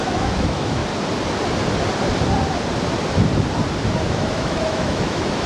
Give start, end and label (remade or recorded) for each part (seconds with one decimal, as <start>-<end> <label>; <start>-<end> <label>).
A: 0.0-0.8 remade; 0.8-4.1 recorded; 4.1-5.5 remade